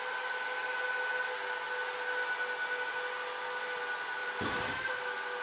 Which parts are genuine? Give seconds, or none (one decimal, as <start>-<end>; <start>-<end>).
0.0-4.2; 4.8-5.4

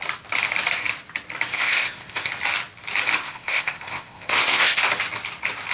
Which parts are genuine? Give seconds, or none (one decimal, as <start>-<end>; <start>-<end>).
0.0-1.5; 2.3-3.2; 4.8-5.7

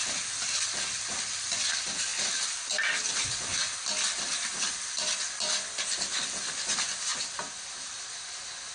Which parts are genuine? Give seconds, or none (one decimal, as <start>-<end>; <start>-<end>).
0.0-8.7

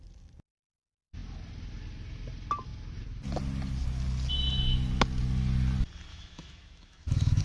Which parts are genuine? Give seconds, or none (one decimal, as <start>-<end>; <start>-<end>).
0.0-6.1

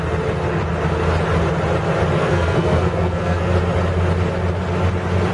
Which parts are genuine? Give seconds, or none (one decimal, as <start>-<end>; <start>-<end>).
0.0-2.2; 3.5-5.3

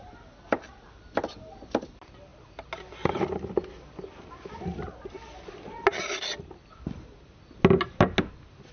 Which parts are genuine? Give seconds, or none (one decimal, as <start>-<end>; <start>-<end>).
0.0-8.7